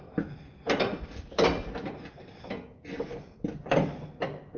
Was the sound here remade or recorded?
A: recorded